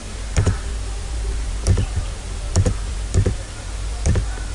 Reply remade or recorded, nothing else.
remade